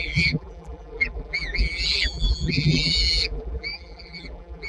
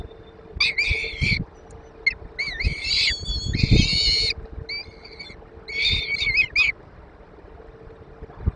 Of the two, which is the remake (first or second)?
first